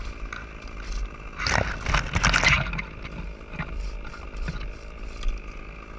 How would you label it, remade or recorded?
recorded